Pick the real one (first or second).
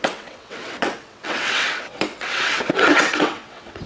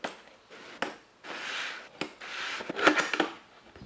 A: second